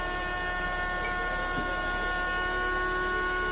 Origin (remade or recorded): recorded